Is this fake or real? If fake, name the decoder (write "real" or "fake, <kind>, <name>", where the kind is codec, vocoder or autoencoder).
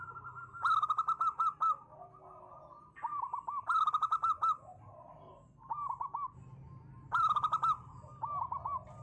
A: real